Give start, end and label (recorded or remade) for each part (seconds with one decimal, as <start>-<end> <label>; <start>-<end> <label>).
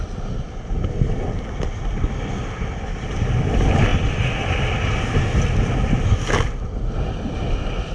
0.0-7.9 recorded